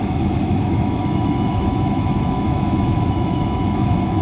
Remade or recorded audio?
remade